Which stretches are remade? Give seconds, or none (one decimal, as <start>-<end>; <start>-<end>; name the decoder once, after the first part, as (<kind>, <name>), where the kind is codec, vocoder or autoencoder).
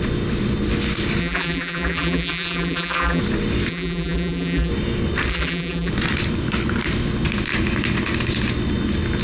1.2-3.2 (vocoder, BigVGAN v2); 3.7-4.7; 5.3-5.9